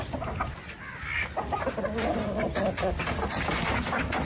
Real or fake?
real